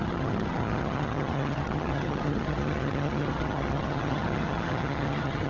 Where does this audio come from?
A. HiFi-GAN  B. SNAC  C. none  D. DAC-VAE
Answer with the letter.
A